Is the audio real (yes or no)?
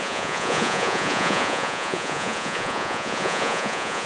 no